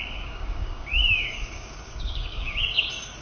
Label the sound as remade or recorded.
remade